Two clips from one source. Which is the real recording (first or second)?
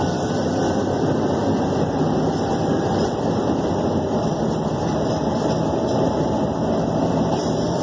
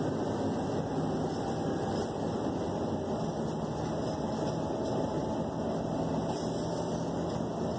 second